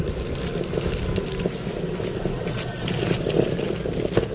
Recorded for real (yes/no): yes